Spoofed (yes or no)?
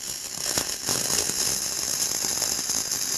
no